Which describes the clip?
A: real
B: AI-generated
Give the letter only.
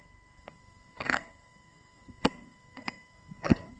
B